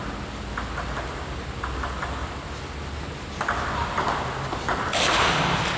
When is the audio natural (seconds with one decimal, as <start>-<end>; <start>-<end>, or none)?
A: 0.0-5.8

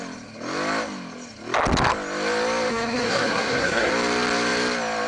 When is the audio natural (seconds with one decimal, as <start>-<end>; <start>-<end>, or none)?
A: 0.0-2.7; 3.9-5.1

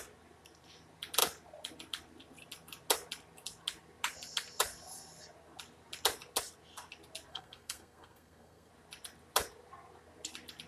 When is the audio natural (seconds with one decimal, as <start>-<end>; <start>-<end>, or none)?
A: 0.0-7.3; 8.7-10.7

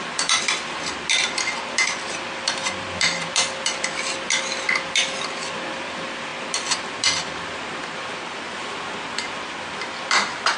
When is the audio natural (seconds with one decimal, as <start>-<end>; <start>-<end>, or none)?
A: 0.0-10.6

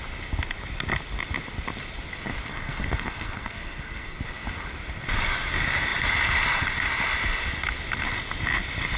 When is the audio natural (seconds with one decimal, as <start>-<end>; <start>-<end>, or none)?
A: 0.0-2.5; 4.2-9.0

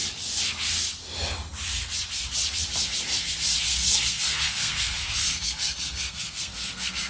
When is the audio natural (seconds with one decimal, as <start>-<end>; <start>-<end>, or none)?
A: 0.0-3.7

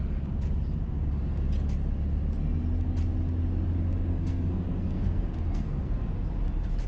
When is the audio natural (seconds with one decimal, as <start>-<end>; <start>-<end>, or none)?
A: 0.0-4.1; 6.1-6.9